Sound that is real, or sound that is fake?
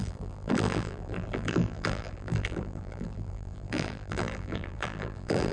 fake